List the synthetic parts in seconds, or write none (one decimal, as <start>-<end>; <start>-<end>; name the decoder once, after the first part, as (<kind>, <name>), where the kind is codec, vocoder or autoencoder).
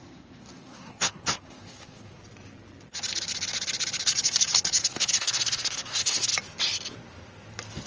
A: 0.0-2.2 (codec, SNAC); 4.8-6.3